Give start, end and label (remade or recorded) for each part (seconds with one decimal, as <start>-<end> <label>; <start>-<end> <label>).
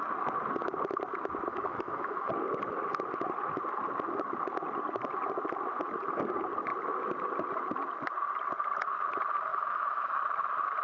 0.0-1.5 recorded; 1.5-2.3 remade; 2.3-9.5 recorded; 9.5-10.2 remade; 10.2-10.8 recorded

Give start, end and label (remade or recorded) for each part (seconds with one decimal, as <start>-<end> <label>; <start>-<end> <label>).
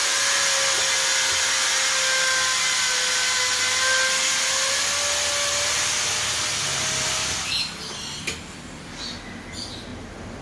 0.0-10.4 recorded